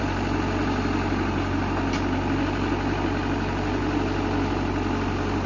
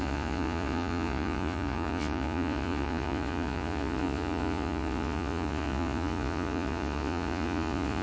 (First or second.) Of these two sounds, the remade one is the second